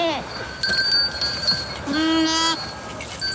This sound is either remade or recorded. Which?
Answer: recorded